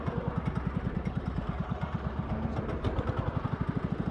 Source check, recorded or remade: remade